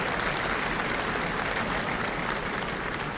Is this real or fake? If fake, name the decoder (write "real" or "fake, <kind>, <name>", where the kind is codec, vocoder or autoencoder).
real